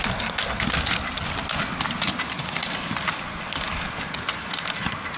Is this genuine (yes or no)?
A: yes